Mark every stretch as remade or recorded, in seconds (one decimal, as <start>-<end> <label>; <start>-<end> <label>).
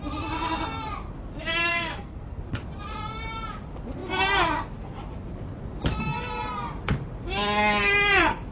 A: 0.0-1.7 recorded; 1.7-2.4 remade; 2.4-8.5 recorded